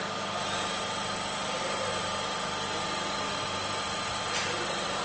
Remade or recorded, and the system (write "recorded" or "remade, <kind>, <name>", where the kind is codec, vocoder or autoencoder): recorded